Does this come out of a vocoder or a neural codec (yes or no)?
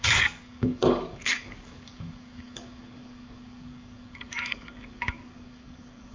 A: yes